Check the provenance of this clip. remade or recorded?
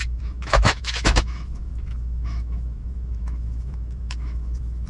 remade